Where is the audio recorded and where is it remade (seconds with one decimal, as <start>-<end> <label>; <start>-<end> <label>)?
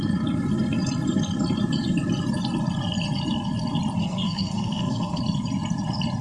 0.0-4.0 recorded; 4.0-5.2 remade; 5.2-6.2 recorded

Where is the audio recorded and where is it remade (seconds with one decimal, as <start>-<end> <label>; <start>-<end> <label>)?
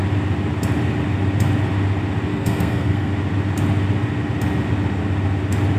0.0-2.3 recorded; 2.3-3.1 remade; 3.1-5.8 recorded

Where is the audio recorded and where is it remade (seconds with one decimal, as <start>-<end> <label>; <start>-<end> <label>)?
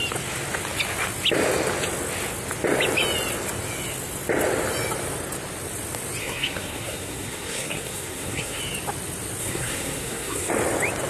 0.0-6.2 recorded; 6.2-8.6 remade; 8.6-9.4 recorded; 9.4-10.5 remade; 10.5-11.1 recorded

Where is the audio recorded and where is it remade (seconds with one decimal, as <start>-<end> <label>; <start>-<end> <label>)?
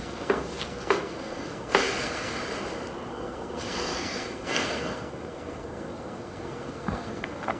0.0-2.4 remade; 2.4-3.1 recorded; 3.1-7.6 remade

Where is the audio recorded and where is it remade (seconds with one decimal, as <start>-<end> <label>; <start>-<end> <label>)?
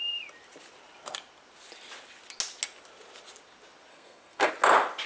0.0-3.9 recorded; 3.9-4.5 remade; 4.5-5.1 recorded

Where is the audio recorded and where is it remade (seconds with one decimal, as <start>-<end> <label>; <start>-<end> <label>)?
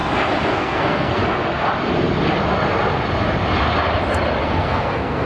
0.0-0.5 recorded; 0.5-1.2 remade; 1.2-4.4 recorded; 4.4-5.3 remade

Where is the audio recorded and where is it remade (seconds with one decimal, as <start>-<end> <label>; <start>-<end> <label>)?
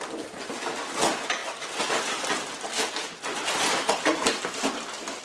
0.0-5.2 recorded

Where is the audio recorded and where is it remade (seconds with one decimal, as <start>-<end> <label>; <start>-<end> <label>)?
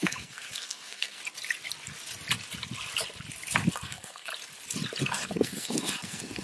0.0-1.2 remade; 1.2-3.7 recorded; 3.7-4.3 remade; 4.3-5.0 recorded; 5.0-6.4 remade